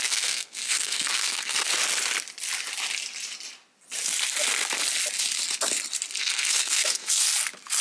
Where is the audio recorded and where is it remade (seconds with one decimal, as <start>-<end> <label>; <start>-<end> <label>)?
0.0-1.7 remade; 1.7-6.2 recorded; 6.2-7.3 remade; 7.3-7.8 recorded

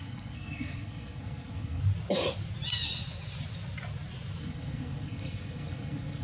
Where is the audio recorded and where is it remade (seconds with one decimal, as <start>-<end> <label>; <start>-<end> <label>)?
0.0-1.8 remade; 1.8-4.4 recorded; 4.4-6.2 remade

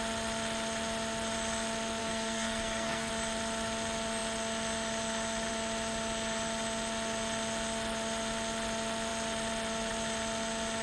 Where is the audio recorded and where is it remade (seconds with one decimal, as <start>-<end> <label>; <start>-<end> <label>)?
0.0-2.0 recorded; 2.0-3.1 remade; 3.1-10.8 recorded

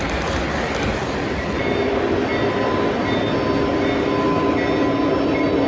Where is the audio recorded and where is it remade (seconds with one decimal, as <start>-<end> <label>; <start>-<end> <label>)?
0.0-5.7 recorded

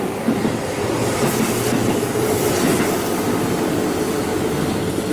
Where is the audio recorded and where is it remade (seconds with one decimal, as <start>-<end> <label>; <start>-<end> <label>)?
0.0-5.1 recorded

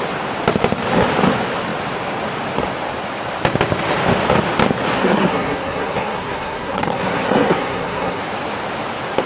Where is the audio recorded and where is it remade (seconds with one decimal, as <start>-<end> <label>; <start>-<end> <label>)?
0.0-5.0 recorded; 5.0-8.2 remade; 8.2-9.3 recorded